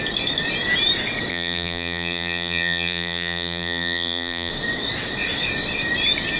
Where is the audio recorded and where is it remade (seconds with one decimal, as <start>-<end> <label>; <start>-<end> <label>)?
0.0-1.3 recorded; 1.3-4.5 remade; 4.5-6.4 recorded